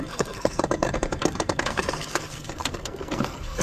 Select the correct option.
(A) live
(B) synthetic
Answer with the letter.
B